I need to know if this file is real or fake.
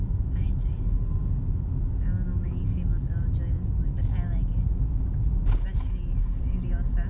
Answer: real